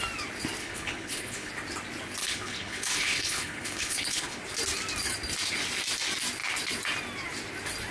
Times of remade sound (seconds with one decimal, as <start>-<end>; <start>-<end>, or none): 0.6-1.5; 2.2-4.4